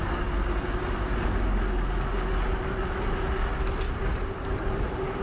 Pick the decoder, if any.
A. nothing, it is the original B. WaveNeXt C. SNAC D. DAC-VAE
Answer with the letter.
A